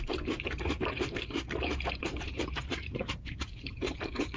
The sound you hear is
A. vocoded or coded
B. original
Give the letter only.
A